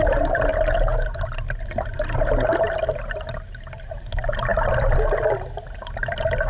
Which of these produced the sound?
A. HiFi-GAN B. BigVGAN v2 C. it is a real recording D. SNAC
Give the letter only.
C